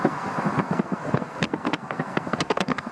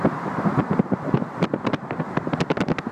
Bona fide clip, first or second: second